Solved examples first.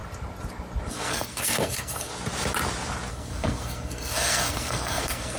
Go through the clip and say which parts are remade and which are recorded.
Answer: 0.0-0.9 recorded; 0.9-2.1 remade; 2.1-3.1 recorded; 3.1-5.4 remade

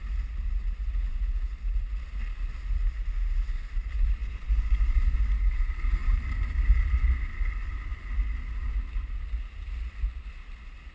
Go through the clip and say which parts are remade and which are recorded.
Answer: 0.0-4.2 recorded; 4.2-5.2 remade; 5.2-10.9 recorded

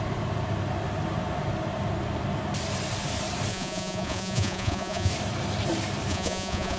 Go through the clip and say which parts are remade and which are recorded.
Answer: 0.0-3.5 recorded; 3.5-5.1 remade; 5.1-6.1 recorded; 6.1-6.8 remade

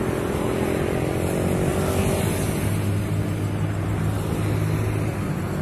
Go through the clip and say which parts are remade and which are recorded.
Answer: 0.0-5.6 recorded

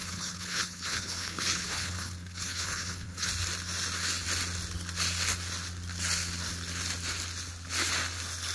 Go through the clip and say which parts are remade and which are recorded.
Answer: 0.0-3.3 remade; 3.3-8.5 recorded

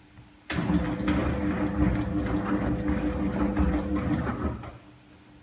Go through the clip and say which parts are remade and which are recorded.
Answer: 0.0-5.4 recorded